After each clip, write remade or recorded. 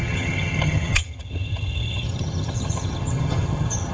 remade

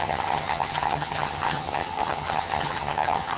remade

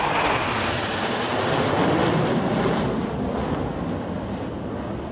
recorded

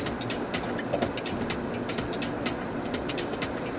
recorded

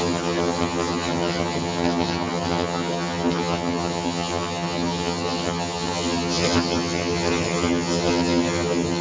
remade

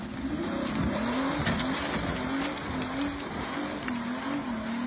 recorded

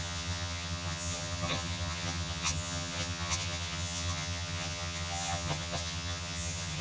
remade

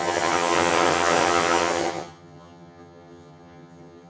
remade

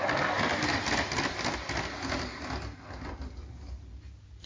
recorded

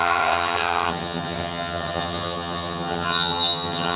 remade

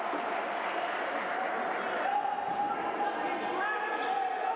recorded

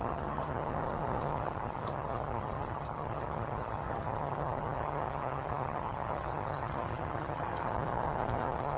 remade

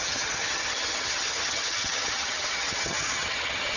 remade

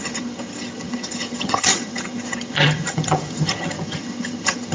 remade